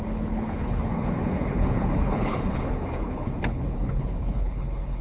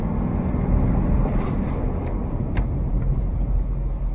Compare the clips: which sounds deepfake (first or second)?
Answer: first